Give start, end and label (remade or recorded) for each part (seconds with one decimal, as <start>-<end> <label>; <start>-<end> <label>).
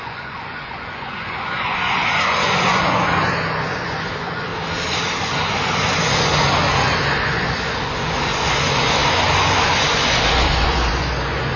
0.0-4.5 remade; 4.5-5.2 recorded; 5.2-11.6 remade